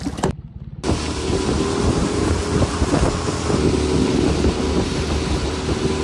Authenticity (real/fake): real